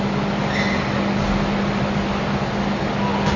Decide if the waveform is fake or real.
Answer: real